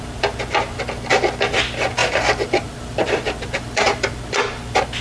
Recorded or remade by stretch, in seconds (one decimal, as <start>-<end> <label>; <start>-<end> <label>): 0.0-2.0 recorded; 2.0-4.2 remade; 4.2-5.0 recorded